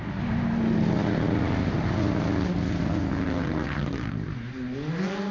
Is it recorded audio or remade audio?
recorded